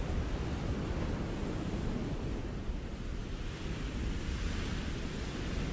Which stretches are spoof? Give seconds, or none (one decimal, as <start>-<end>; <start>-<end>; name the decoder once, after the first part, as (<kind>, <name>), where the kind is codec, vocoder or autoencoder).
2.0-2.7 (vocoder, BigVGAN v2)